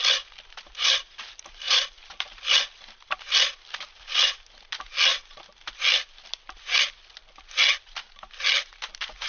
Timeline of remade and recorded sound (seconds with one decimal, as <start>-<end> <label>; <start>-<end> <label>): 0.0-0.7 recorded; 0.7-2.4 remade; 2.4-9.3 recorded